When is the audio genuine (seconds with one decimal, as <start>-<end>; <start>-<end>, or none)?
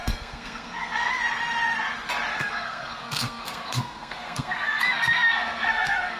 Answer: 1.1-2.3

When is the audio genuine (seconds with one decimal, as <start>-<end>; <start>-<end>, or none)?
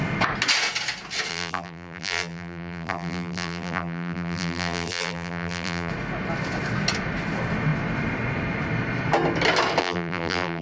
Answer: 0.0-1.3; 5.9-9.8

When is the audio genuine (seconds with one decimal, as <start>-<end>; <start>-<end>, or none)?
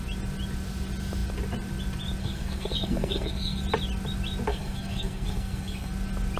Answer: 0.0-2.2; 3.6-4.5; 5.9-6.4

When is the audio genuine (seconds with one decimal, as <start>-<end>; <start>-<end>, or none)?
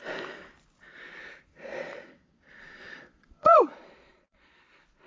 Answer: 0.0-1.5; 4.6-5.1